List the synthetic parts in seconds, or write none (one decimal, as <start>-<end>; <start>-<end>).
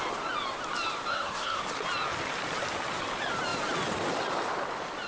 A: 1.1-1.6